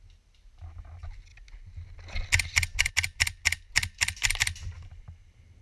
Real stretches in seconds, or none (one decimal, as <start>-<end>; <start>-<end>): 0.0-5.6